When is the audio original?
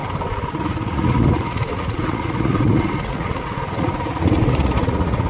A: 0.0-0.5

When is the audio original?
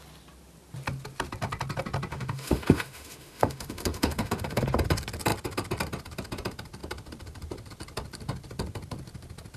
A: 0.0-2.1; 4.6-9.6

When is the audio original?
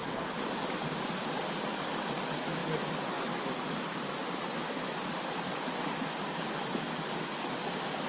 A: 0.0-8.1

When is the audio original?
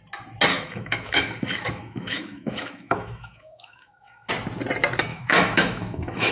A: 0.0-0.5; 4.3-5.1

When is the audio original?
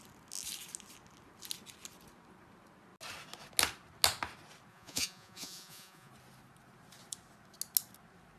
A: 0.0-4.7; 6.1-8.4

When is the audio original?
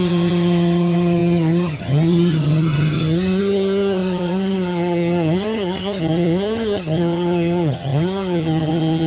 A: none